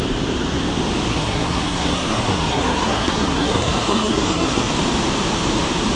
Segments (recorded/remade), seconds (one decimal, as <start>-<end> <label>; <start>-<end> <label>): 0.0-1.1 recorded; 1.1-4.7 remade; 4.7-6.0 recorded